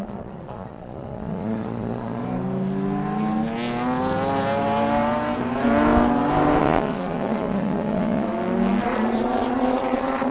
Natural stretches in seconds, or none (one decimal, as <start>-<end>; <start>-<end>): 2.2-6.6; 8.3-8.8